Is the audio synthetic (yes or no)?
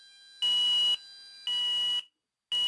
no